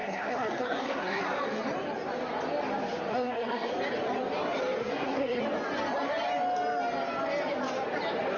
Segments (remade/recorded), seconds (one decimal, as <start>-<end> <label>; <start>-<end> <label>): 0.0-1.2 remade; 1.2-3.1 recorded; 3.1-3.7 remade; 3.7-4.8 recorded; 4.8-5.4 remade; 5.4-8.4 recorded